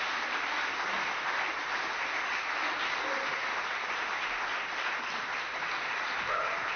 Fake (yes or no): no